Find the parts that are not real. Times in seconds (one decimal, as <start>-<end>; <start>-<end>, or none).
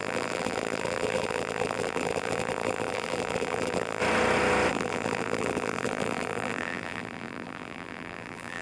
0.0-4.0; 4.7-8.6